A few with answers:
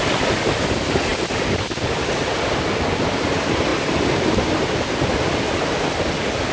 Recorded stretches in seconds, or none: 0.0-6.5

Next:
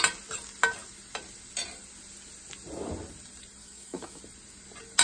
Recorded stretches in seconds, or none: 0.0-3.6; 4.2-5.0

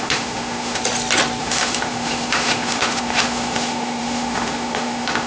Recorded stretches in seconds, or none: 0.8-1.4

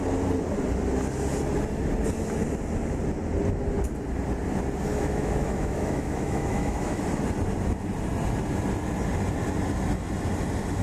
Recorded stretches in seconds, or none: 0.0-4.9; 7.0-10.8

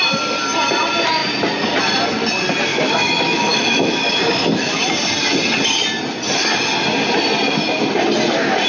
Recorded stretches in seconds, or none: 0.0-2.7; 4.8-8.7

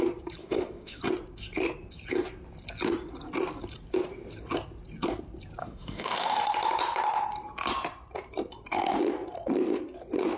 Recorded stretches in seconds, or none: 0.0-0.4; 1.0-5.6; 6.4-10.4